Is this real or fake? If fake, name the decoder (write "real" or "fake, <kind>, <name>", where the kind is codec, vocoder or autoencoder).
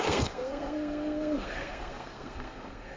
fake, codec, SNAC